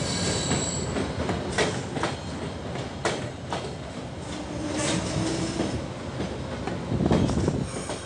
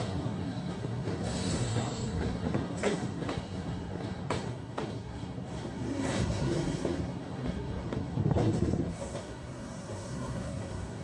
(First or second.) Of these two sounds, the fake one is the second